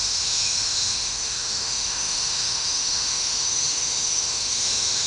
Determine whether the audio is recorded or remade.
remade